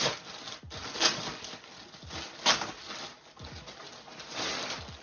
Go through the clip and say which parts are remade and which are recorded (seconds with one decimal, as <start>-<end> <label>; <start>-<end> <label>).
0.0-5.0 recorded